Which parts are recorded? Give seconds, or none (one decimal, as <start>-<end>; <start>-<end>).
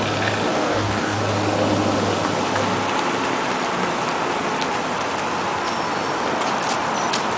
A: 0.0-0.5; 1.2-7.4